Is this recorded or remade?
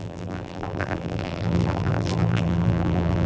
remade